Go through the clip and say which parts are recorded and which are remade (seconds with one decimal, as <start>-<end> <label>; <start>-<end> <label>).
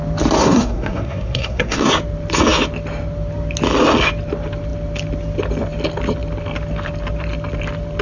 0.0-0.4 recorded; 0.4-1.9 remade; 1.9-8.0 recorded